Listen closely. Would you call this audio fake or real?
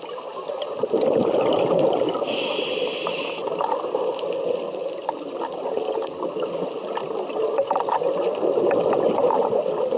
real